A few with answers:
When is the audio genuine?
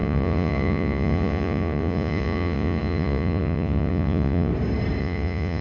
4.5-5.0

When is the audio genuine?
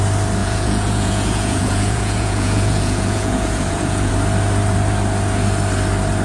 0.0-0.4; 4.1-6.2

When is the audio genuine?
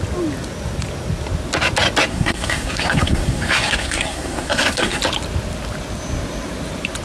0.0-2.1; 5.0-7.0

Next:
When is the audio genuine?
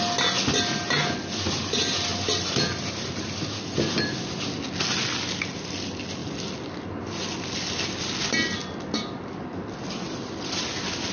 0.0-11.1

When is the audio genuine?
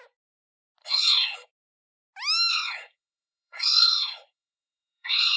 0.0-0.8; 1.5-2.5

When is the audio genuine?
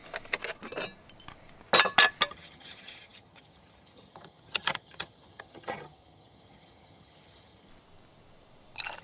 0.0-2.3; 7.7-9.0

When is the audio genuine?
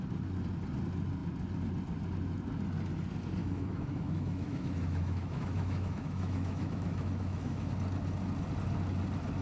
0.0-3.4; 7.7-9.4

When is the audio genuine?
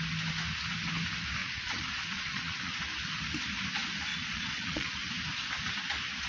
0.0-1.4; 2.8-4.1; 5.1-6.3